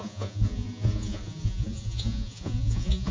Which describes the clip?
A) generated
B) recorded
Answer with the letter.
A